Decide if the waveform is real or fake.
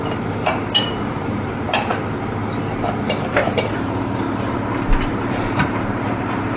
fake